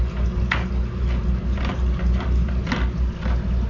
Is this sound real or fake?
real